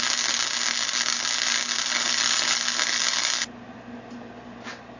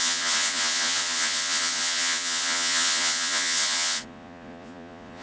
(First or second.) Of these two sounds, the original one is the first